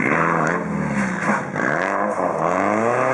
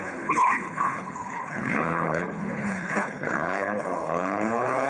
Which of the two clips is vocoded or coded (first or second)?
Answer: second